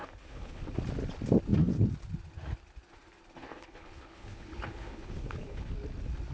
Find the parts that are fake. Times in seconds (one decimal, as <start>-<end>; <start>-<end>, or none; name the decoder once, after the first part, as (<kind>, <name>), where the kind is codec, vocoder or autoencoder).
0.0-0.6 (codec, HILCodec); 3.4-5.7